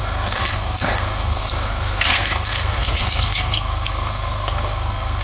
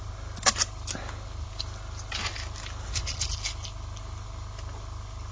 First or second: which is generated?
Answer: first